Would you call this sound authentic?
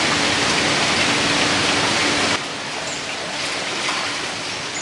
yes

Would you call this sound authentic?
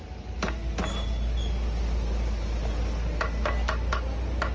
yes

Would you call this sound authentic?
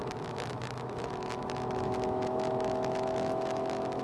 no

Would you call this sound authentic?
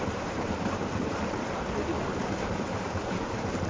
no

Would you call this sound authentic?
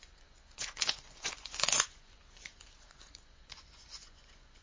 no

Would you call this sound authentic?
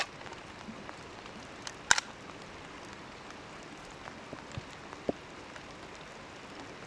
yes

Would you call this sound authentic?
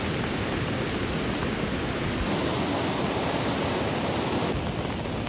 yes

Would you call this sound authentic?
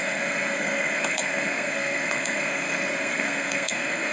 no